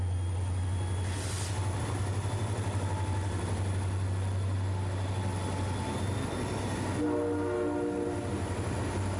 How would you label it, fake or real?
real